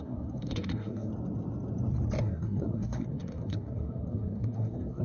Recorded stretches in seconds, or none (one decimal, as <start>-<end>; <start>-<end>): 1.1-2.2